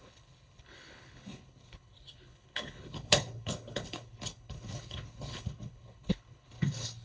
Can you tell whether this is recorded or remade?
remade